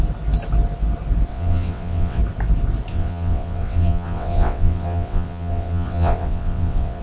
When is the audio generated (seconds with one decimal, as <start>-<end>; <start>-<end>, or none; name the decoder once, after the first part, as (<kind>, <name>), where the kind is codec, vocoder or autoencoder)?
1.3-2.2 (vocoder, WaveNeXt); 2.9-7.0